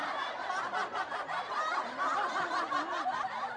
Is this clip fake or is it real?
real